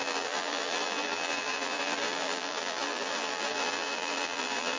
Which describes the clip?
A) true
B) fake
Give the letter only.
B